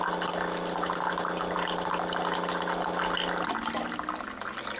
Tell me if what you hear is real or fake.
real